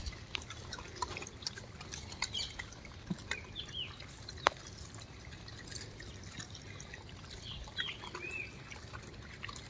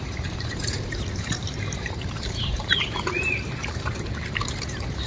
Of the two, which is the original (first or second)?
first